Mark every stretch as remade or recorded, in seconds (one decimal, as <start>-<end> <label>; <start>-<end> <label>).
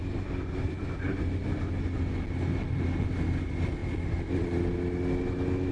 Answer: 0.0-5.7 recorded